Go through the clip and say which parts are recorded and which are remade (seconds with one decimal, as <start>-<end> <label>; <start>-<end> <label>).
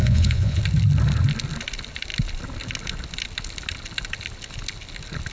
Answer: 0.0-0.6 remade; 0.6-5.3 recorded